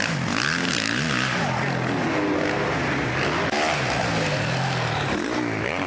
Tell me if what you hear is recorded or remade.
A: recorded